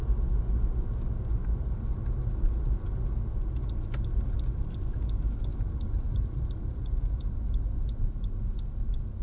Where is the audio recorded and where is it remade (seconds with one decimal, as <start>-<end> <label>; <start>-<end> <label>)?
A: 0.0-1.4 recorded; 1.4-2.1 remade; 2.1-5.5 recorded; 5.5-7.4 remade; 7.4-9.2 recorded

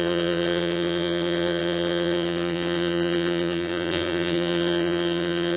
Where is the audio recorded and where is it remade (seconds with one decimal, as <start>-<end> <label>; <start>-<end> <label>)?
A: 0.0-5.6 remade